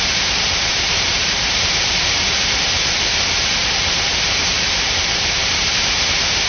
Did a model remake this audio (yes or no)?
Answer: yes